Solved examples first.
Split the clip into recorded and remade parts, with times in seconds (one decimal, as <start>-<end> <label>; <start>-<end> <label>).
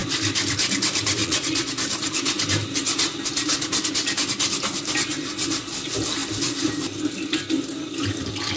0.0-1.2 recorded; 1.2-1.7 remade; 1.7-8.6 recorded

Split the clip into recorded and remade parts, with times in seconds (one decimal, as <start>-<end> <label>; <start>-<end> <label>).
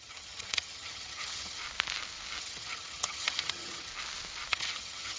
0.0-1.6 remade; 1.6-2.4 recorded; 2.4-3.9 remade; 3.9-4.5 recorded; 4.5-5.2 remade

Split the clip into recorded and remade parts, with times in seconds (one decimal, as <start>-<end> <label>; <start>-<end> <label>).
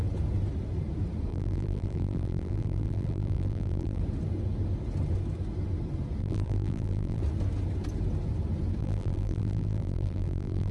0.0-1.3 recorded; 1.3-4.0 remade; 4.0-6.2 recorded; 6.2-7.2 remade; 7.2-8.8 recorded; 8.8-10.7 remade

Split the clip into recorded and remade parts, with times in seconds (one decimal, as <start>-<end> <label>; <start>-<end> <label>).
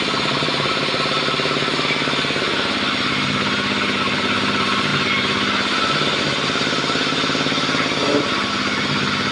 0.0-9.3 recorded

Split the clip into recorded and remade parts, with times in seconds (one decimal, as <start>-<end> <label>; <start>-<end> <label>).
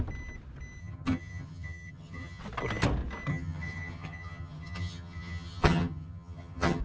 0.0-0.8 recorded; 0.8-2.4 remade; 2.4-3.3 recorded; 3.3-6.8 remade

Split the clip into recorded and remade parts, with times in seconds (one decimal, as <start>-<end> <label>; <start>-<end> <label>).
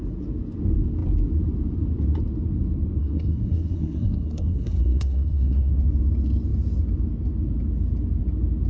0.0-3.0 recorded; 3.0-5.7 remade; 5.7-8.7 recorded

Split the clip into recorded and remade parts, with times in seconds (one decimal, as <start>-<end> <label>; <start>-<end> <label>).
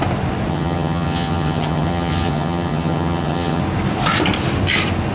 0.0-0.5 recorded; 0.5-3.6 remade; 3.6-5.1 recorded